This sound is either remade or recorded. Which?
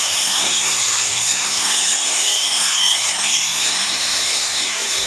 remade